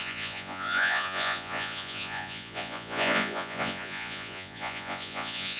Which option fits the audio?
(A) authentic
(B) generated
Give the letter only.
B